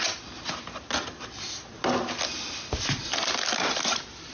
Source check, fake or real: real